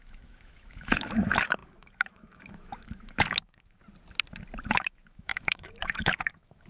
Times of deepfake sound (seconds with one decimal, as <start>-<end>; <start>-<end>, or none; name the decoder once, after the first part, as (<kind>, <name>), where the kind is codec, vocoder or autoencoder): 0.0-3.8 (autoencoder, DAC-VAE); 4.7-6.7